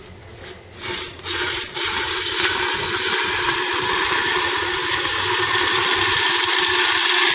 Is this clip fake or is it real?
real